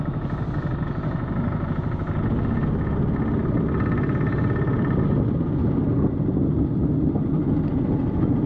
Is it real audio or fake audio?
real